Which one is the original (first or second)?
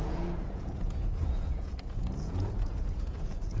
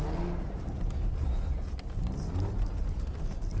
second